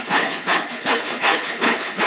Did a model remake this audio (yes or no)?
yes